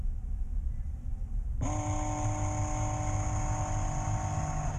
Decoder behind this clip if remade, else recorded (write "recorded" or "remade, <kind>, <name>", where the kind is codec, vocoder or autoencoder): recorded